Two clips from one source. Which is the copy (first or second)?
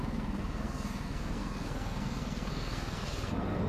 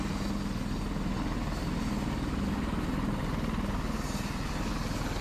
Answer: first